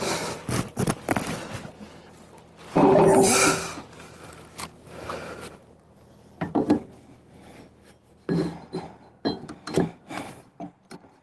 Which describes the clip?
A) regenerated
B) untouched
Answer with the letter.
B